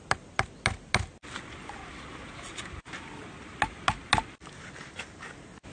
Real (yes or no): yes